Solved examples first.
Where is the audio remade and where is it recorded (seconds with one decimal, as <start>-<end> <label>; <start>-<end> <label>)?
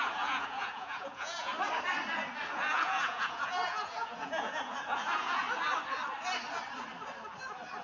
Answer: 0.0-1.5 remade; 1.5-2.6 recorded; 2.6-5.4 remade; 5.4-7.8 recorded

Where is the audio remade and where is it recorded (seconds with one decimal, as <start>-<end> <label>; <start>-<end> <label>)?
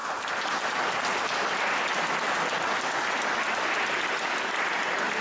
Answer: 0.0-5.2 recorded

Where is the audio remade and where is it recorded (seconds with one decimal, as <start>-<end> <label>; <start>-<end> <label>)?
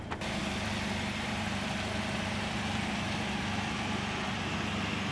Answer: 0.0-5.1 recorded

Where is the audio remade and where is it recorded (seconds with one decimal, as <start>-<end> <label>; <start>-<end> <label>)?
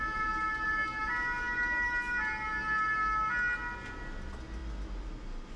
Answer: 0.0-5.6 recorded